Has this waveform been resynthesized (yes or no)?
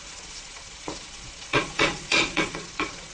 yes